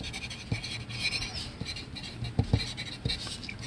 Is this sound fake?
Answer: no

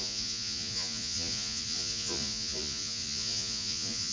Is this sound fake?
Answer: yes